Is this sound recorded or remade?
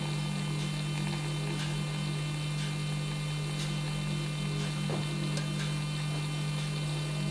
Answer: recorded